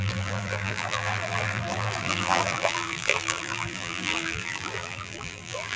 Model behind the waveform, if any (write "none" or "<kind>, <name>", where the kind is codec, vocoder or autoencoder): vocoder, BigVGAN v2